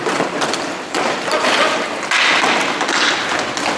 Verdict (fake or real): real